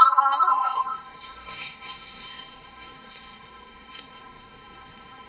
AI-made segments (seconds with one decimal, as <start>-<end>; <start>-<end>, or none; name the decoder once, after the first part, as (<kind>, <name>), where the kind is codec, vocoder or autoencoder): 0.0-5.3 (codec, SNAC)